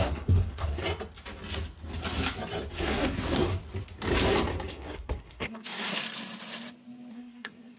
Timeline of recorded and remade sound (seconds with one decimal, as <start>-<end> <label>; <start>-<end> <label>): 0.0-0.8 remade; 0.8-2.7 recorded; 2.7-3.6 remade; 3.6-4.7 recorded; 4.7-5.9 remade; 5.9-7.1 recorded; 7.1-7.8 remade